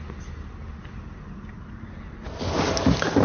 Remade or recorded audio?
recorded